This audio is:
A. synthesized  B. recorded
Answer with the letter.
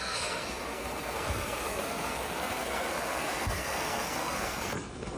A